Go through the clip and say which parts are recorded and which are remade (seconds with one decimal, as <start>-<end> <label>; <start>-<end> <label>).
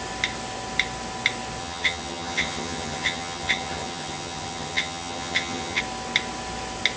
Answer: 0.0-1.6 recorded; 1.6-5.8 remade; 5.8-7.0 recorded